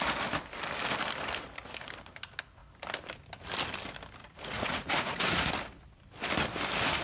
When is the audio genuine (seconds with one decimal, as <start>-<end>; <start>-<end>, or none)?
0.0-4.2; 5.5-7.0

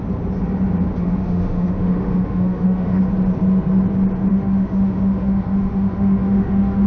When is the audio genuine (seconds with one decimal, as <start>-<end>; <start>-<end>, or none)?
0.0-1.0; 3.0-4.3

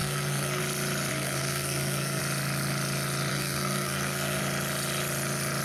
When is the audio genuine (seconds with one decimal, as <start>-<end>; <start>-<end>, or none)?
0.6-1.1; 2.2-3.3; 4.4-5.6

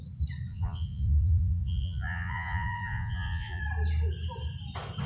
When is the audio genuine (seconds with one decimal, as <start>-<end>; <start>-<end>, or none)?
0.0-0.5; 3.6-5.1